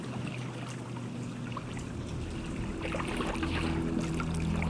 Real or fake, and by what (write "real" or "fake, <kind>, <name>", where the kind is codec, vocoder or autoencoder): real